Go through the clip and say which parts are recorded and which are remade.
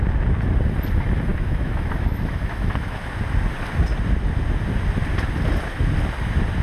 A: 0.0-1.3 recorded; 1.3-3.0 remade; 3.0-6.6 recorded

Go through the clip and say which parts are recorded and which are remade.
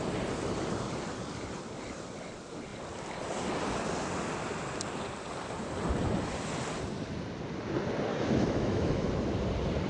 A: 0.0-8.1 recorded; 8.1-9.1 remade; 9.1-9.9 recorded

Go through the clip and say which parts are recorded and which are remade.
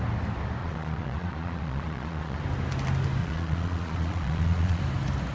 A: 0.0-0.6 recorded; 0.6-2.4 remade; 2.4-3.2 recorded; 3.2-4.8 remade; 4.8-5.3 recorded